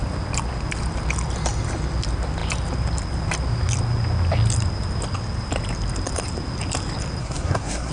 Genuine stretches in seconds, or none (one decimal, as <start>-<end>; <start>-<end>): 0.0-7.2